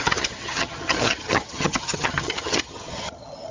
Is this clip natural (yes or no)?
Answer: no